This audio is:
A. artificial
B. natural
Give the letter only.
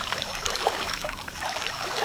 A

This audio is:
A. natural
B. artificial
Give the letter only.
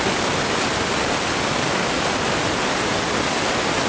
A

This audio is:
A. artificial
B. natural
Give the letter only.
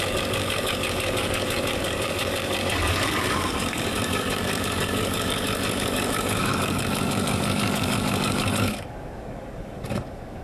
A